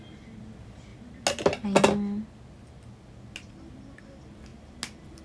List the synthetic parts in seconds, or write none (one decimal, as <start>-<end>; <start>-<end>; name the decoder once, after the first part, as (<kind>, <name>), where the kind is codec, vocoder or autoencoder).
none